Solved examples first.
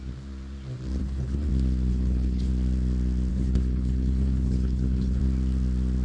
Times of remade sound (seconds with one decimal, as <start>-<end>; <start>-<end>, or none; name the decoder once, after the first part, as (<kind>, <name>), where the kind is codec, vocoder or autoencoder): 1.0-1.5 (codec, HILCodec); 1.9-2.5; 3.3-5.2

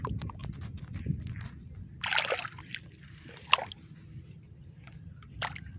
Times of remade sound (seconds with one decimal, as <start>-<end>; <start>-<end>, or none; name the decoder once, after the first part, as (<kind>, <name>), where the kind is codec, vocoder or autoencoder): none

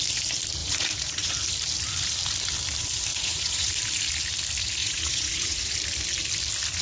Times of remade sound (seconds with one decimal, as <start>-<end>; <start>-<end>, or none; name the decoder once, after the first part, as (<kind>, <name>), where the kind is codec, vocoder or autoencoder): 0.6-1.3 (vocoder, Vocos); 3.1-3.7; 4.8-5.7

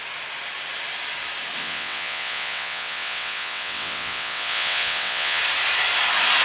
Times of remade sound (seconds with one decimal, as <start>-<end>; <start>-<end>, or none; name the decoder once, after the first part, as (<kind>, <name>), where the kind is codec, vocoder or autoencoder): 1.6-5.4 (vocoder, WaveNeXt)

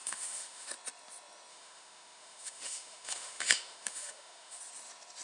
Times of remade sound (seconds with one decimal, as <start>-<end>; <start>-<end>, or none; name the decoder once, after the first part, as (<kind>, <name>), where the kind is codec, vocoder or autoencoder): 0.0-0.7 (autoencoder, DAC-VAE); 1.5-4.6

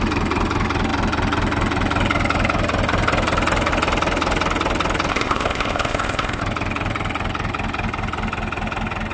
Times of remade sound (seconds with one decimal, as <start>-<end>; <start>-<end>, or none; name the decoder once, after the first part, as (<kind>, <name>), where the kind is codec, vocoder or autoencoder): 5.1-6.4 (codec, ZipCodec)

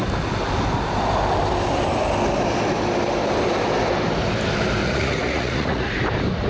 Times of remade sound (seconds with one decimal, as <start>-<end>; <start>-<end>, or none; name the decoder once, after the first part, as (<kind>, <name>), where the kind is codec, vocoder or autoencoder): 4.8-5.9 (vocoder, Vocos)

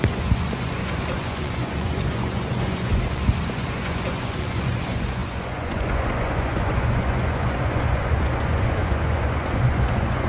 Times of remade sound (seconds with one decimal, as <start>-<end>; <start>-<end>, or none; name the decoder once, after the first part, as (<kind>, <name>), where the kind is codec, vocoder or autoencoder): 0.0-10.3 (vocoder, Vocos)